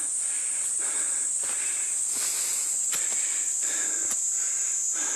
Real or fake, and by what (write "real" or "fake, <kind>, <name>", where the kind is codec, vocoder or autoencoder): real